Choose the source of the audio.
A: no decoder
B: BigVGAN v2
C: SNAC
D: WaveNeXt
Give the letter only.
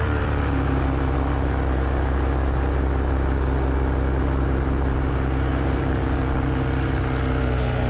B